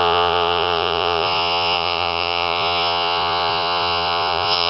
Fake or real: fake